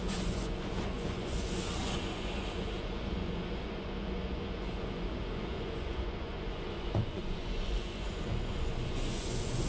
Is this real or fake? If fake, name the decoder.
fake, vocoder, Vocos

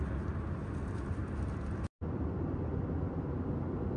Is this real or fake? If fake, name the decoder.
real